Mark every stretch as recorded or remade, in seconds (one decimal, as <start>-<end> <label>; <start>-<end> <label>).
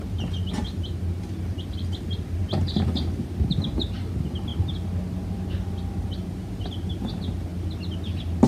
0.0-2.4 recorded; 2.4-3.1 remade; 3.1-8.5 recorded